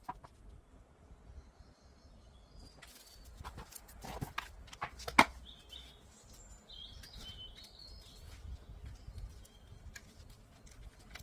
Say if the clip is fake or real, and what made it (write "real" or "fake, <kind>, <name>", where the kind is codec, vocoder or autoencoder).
real